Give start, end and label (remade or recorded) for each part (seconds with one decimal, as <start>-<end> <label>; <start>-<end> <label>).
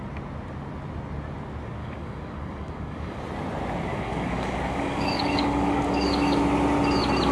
0.0-1.8 recorded; 1.8-3.2 remade; 3.2-3.9 recorded; 3.9-6.4 remade; 6.4-7.3 recorded